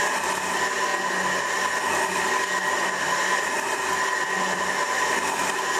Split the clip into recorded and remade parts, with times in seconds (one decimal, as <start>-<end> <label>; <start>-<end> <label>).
0.0-5.8 recorded